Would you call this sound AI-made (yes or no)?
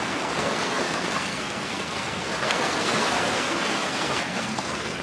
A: yes